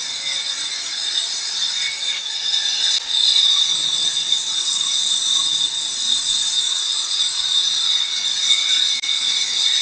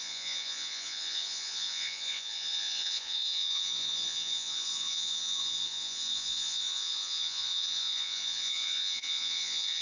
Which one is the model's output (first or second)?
second